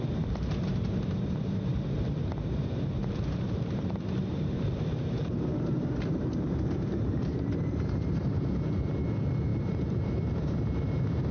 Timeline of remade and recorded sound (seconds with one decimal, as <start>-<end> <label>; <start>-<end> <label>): 0.0-11.3 remade